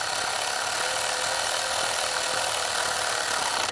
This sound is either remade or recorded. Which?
recorded